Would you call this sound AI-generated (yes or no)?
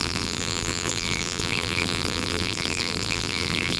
yes